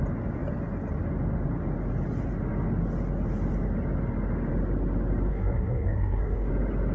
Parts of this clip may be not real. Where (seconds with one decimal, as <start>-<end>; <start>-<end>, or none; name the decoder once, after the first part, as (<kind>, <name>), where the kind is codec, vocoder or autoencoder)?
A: 5.3-6.5 (codec, SNAC)